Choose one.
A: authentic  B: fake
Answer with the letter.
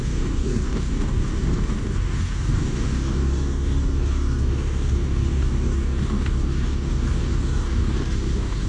B